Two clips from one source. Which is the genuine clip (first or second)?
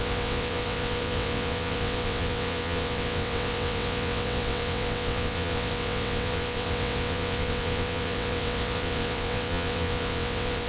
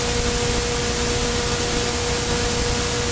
second